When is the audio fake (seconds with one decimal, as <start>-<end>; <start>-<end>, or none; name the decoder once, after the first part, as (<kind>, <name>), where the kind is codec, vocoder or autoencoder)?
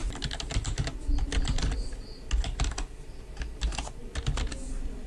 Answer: none